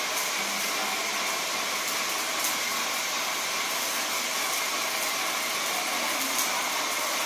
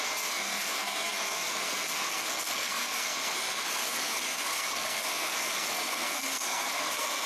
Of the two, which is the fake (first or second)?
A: second